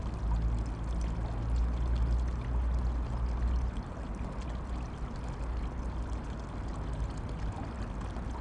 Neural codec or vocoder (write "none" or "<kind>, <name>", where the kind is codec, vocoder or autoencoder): none